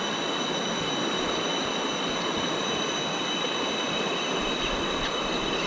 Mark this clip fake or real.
real